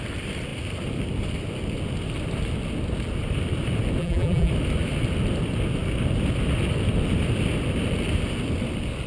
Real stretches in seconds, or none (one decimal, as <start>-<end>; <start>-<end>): 0.0-4.0; 4.5-9.1